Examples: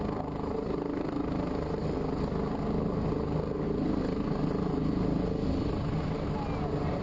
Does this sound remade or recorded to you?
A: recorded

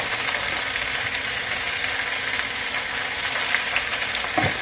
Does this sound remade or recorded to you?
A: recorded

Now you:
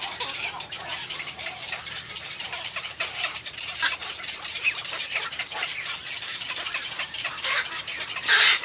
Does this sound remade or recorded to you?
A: remade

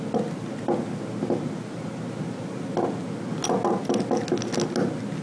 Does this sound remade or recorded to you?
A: recorded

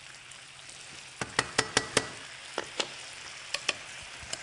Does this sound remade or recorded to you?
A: recorded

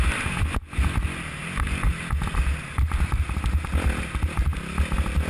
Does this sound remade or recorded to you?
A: recorded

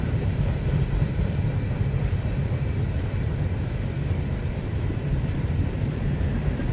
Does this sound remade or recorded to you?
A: remade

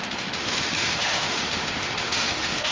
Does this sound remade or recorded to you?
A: remade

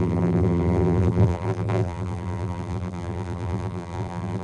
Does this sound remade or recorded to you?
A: remade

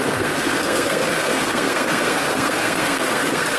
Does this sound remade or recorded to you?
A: remade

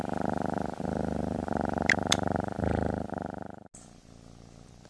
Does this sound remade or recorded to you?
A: recorded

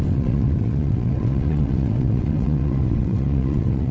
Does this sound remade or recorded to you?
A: remade